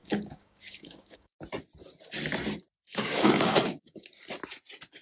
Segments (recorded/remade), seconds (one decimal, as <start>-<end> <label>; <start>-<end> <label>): 0.0-1.4 remade; 1.4-2.9 recorded; 2.9-4.0 remade; 4.0-5.0 recorded